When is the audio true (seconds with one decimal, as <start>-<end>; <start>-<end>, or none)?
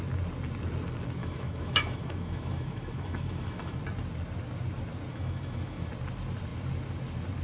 0.0-1.2; 3.8-5.1; 5.9-7.4